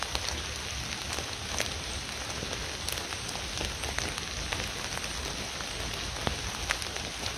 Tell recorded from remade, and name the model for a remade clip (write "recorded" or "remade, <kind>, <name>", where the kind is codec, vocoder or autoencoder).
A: recorded